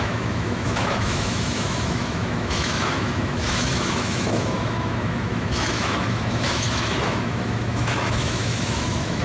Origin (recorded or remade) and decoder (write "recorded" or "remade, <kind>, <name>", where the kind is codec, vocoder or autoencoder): remade, autoencoder, DAC-VAE